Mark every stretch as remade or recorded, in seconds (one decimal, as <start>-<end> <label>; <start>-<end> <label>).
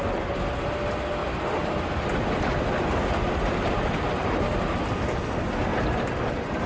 0.0-1.2 recorded; 1.2-4.7 remade; 4.7-5.7 recorded; 5.7-6.7 remade